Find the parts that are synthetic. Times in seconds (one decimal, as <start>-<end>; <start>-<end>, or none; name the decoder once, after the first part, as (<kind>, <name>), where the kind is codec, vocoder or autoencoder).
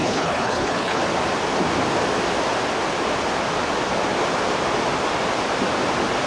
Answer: 0.0-1.0 (codec, HILCodec)